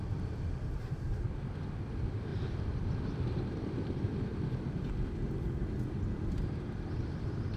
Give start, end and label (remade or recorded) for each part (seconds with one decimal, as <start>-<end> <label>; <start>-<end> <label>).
0.0-4.3 remade; 4.3-5.6 recorded; 5.6-7.6 remade